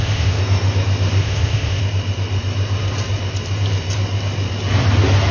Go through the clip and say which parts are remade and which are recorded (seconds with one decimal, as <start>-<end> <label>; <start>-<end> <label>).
0.0-0.4 remade; 0.4-1.2 recorded; 1.2-1.8 remade; 1.8-5.3 recorded